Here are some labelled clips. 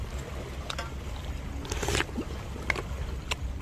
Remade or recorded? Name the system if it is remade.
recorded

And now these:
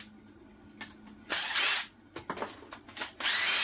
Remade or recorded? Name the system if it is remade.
recorded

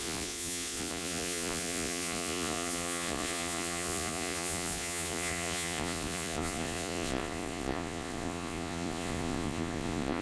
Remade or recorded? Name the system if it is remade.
remade, vocoder, Vocos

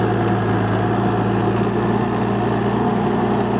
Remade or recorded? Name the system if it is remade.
recorded